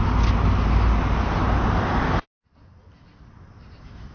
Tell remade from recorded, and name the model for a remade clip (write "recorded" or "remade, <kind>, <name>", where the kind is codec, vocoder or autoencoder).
recorded